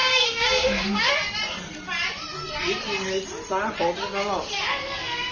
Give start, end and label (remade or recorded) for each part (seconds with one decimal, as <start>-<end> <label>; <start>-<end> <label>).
0.0-1.1 remade; 1.1-4.7 recorded; 4.7-5.3 remade